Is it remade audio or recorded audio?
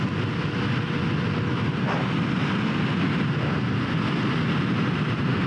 recorded